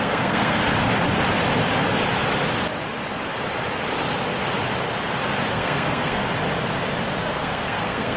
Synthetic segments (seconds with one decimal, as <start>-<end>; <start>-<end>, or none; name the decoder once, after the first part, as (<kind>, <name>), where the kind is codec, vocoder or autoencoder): 0.0-0.6 (codec, SNAC); 5.5-6.2; 7.3-8.2